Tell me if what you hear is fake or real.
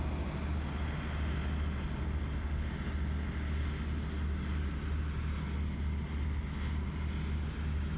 real